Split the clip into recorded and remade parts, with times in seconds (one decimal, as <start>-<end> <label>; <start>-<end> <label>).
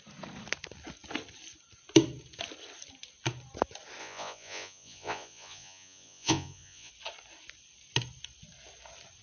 0.0-4.0 recorded; 4.0-6.9 remade; 6.9-9.2 recorded